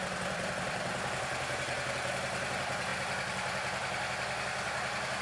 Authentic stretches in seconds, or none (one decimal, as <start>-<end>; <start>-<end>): 0.0-5.2